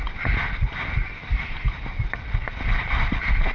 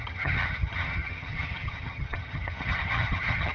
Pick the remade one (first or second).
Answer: second